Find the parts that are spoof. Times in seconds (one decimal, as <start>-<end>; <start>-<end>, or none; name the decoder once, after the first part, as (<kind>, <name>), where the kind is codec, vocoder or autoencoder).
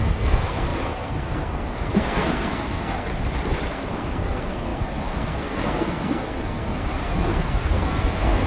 0.0-3.1 (codec, SNAC); 3.7-8.5